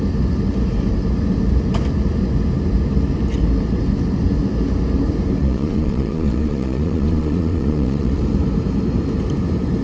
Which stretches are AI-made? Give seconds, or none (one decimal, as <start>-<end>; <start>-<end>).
5.4-8.2